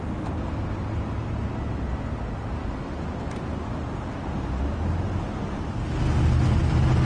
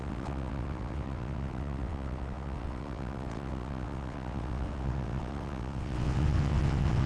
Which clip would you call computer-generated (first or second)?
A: second